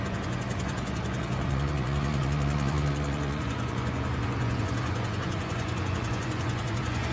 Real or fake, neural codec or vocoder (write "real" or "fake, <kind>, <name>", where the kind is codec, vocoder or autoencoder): fake, vocoder, Vocos